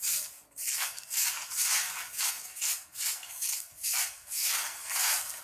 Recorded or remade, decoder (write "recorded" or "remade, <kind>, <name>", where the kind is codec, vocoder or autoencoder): remade, codec, SNAC